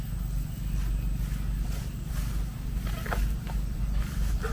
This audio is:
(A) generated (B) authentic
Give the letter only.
B